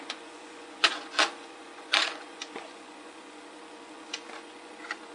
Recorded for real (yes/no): no